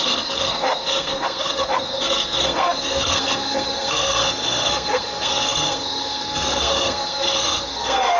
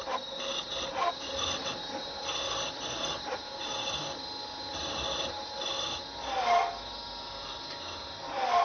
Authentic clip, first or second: second